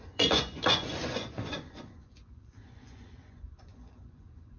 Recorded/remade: remade